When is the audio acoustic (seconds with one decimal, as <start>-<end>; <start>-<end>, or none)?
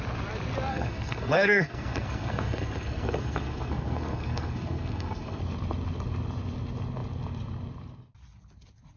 0.0-0.7; 5.4-9.0